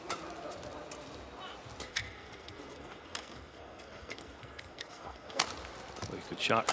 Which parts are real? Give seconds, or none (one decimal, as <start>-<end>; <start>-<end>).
0.0-1.9; 5.4-6.7